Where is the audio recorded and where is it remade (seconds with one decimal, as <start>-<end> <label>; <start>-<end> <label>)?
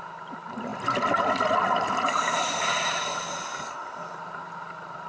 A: 0.0-5.1 recorded